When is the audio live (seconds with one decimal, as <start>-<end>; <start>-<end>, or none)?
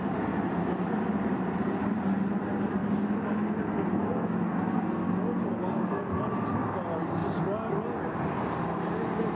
0.0-4.0; 5.1-5.7; 6.2-9.4